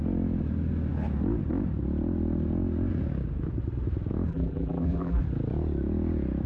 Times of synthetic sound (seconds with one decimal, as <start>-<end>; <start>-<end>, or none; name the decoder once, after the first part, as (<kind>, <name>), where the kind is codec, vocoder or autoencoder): 4.3-5.2 (vocoder, BigVGAN v2)